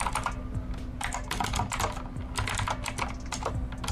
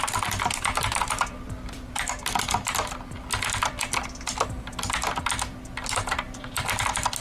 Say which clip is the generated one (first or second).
second